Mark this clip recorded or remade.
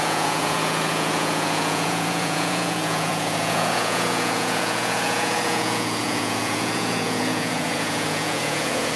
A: remade